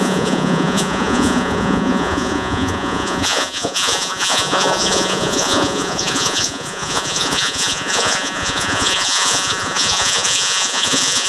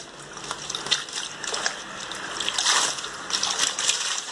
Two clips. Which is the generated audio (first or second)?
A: first